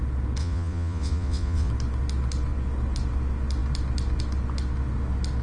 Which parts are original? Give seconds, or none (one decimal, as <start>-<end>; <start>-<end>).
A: 0.0-0.4; 1.7-5.4